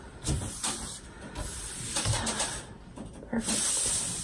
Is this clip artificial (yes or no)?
no